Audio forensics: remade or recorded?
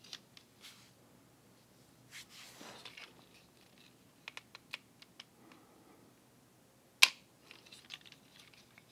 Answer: recorded